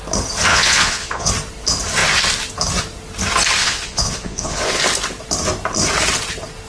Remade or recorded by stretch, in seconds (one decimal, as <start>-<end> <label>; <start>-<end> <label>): 0.0-0.5 recorded; 0.5-1.3 remade; 1.3-3.6 recorded; 3.6-4.8 remade; 4.8-6.7 recorded